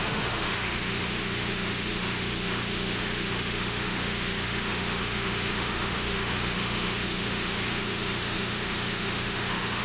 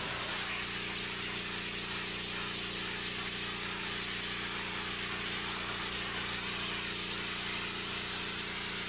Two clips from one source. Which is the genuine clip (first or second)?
second